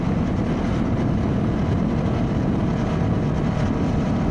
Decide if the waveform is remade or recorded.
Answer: recorded